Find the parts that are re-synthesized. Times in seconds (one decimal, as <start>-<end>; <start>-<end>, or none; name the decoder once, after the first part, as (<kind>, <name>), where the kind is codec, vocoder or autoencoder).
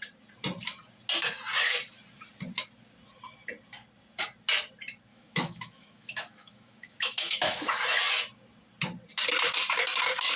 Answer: 5.1-7.8 (autoencoder, DAC-VAE)